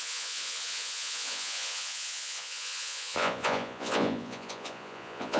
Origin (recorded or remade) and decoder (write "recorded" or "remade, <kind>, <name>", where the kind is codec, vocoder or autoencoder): remade, vocoder, Vocos